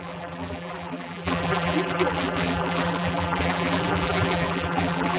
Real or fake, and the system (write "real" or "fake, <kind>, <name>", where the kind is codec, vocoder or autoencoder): fake, vocoder, BigVGAN v2